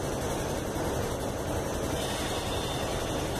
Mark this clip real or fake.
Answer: real